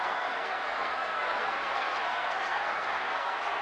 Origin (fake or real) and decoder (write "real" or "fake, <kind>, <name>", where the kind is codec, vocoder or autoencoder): fake, codec, SNAC